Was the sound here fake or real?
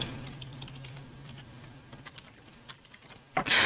fake